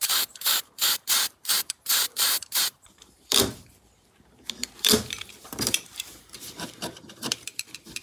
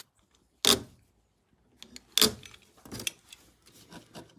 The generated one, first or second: first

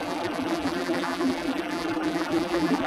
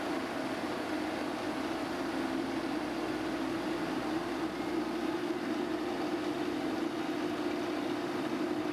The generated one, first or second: first